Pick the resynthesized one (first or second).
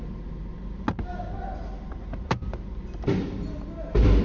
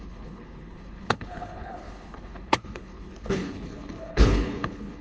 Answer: second